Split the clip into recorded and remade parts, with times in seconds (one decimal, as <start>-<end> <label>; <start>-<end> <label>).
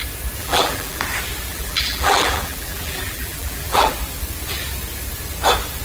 0.0-0.4 recorded; 0.4-1.0 remade; 1.0-1.5 recorded; 1.5-3.9 remade; 3.9-5.8 recorded